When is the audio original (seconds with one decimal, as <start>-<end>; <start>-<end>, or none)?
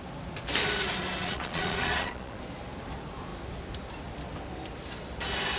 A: 0.0-1.2; 2.4-5.6